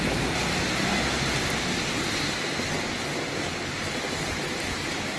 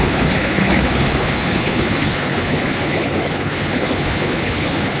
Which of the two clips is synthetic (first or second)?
second